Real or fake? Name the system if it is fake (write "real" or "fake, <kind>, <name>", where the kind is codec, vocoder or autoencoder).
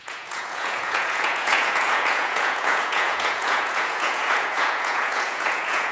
fake, vocoder, Vocos